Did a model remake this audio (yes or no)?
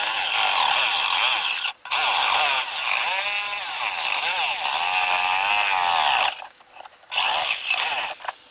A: no